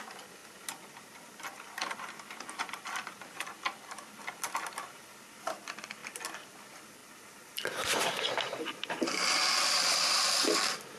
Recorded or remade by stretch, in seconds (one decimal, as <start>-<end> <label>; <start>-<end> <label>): 0.0-6.0 remade; 6.0-6.5 recorded; 6.5-11.0 remade